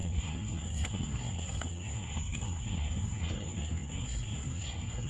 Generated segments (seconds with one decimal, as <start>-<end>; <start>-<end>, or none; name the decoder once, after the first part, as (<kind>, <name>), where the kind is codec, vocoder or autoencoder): 0.0-5.1 (codec, SNAC)